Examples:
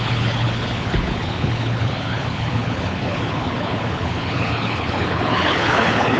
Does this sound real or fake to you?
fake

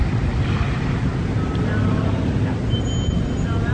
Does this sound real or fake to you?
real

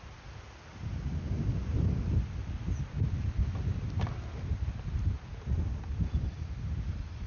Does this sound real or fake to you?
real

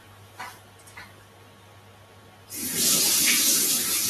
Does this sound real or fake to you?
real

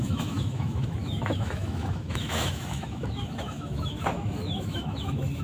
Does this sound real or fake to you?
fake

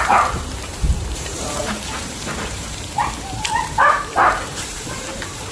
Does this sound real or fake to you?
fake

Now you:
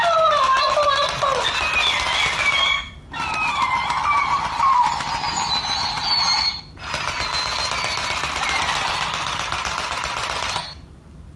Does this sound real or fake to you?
real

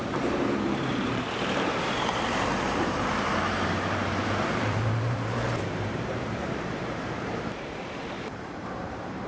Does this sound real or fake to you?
fake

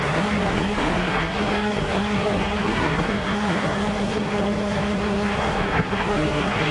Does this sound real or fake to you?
fake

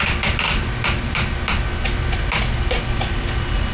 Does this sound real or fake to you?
real